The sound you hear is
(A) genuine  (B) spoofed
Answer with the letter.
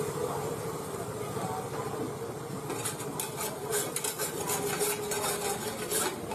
A